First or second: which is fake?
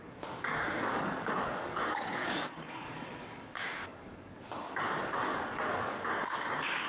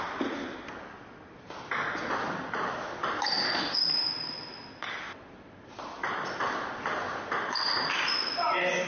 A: first